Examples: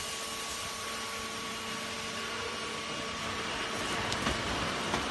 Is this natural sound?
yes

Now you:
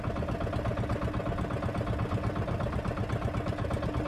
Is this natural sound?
yes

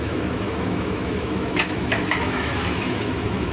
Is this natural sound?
no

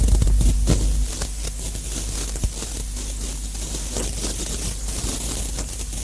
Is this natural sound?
yes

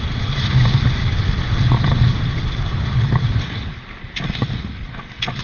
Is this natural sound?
yes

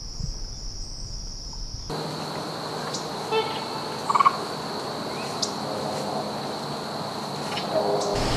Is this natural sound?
yes